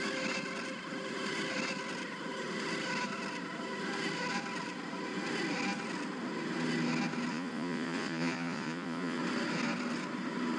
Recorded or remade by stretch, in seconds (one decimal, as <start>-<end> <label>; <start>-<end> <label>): 0.0-7.3 recorded; 7.3-9.2 remade; 9.2-10.6 recorded